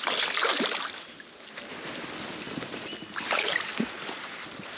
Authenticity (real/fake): real